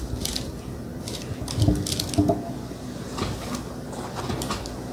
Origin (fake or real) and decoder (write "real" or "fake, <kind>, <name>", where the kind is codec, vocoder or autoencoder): real